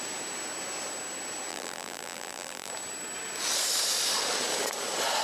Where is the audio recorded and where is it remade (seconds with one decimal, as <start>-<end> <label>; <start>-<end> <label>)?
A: 0.0-1.5 recorded; 1.5-2.7 remade; 2.7-5.2 recorded

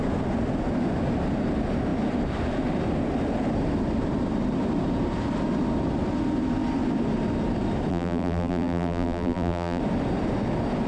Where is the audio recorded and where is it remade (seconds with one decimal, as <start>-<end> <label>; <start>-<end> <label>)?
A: 0.0-7.9 recorded; 7.9-9.8 remade; 9.8-10.9 recorded

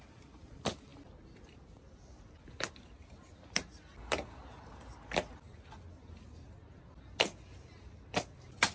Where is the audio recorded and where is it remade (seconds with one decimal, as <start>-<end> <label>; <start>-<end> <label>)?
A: 0.0-8.7 recorded

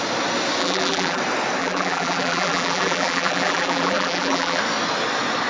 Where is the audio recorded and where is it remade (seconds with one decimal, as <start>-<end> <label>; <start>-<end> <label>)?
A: 0.0-0.6 recorded; 0.6-1.2 remade; 1.2-1.6 recorded; 1.6-4.6 remade; 4.6-5.5 recorded